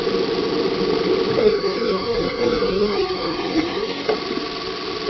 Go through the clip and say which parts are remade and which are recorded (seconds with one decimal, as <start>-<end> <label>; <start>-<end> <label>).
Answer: 0.0-1.4 recorded; 1.4-4.1 remade; 4.1-5.1 recorded